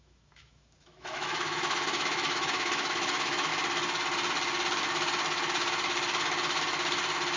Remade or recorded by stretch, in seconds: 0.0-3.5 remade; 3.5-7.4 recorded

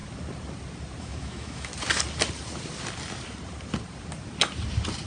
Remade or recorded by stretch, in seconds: 0.0-1.0 recorded; 1.0-1.7 remade; 1.7-5.1 recorded

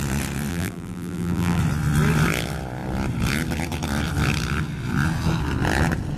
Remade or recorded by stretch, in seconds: 0.0-0.5 recorded; 0.5-1.6 remade; 1.6-6.2 recorded

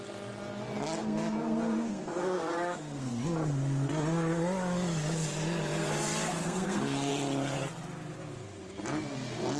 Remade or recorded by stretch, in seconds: 0.0-1.0 recorded; 1.0-3.1 remade; 3.1-6.3 recorded; 6.3-7.1 remade; 7.1-9.6 recorded

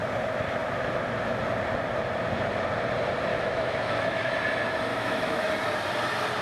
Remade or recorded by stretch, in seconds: 0.0-3.3 recorded; 3.3-4.3 remade; 4.3-4.9 recorded; 4.9-5.5 remade; 5.5-6.4 recorded

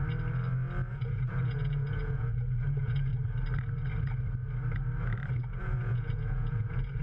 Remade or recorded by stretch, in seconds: 0.0-0.9 recorded; 0.9-3.1 remade; 3.1-5.6 recorded; 5.6-7.0 remade